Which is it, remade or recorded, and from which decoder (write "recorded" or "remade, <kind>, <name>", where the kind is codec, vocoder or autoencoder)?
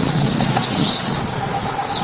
remade, vocoder, Vocos